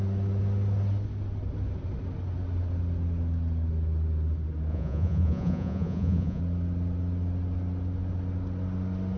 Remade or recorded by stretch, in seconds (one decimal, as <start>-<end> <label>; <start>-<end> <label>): 0.0-4.7 recorded; 4.7-6.4 remade; 6.4-9.2 recorded